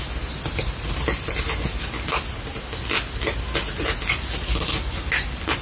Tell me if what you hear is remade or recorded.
recorded